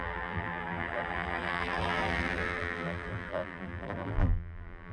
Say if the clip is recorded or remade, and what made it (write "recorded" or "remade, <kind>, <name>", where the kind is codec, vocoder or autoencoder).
remade, vocoder, BigVGAN v2